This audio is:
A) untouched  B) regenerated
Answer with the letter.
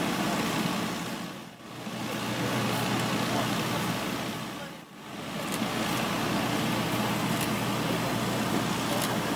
A